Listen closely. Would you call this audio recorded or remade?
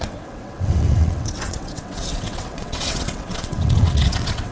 remade